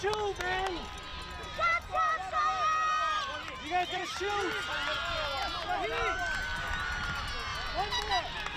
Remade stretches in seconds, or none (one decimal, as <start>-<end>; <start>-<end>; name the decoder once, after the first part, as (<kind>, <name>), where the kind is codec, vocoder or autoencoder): none